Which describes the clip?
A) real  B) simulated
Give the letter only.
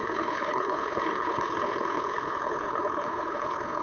B